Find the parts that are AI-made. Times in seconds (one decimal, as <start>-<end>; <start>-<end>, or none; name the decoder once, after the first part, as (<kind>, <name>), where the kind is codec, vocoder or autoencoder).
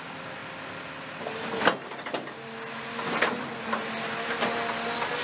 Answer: none